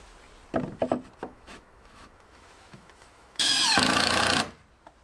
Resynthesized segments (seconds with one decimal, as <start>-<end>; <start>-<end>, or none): 1.2-4.2